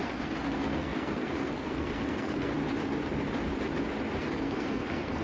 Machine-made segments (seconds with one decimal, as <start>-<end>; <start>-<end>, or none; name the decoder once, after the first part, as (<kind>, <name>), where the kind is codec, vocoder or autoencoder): 0.0-2.5 (codec, SNAC); 4.2-5.2